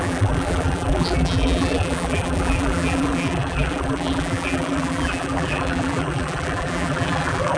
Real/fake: fake